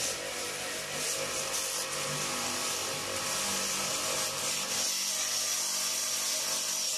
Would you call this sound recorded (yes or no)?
yes